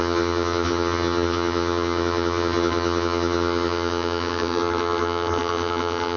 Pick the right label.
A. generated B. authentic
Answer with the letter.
A